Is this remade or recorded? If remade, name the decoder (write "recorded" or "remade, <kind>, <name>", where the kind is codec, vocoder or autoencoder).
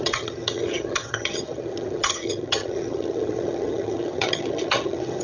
remade, vocoder, HiFi-GAN